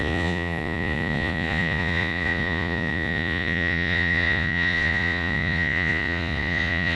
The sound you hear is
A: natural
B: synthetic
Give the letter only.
B